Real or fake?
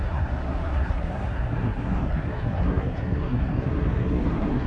fake